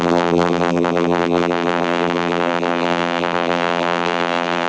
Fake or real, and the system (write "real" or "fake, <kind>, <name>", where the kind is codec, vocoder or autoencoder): fake, vocoder, BigVGAN v2